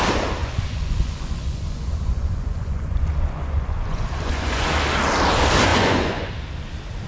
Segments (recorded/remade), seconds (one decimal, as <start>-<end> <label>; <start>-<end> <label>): 0.0-0.4 recorded; 0.4-4.7 remade; 4.7-5.7 recorded; 5.7-6.3 remade; 6.3-7.1 recorded